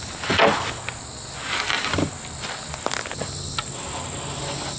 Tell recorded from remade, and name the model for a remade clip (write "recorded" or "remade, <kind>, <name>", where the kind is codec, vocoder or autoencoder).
recorded